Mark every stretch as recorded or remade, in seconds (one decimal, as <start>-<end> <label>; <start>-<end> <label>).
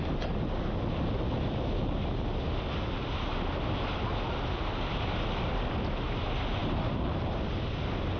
0.0-8.2 recorded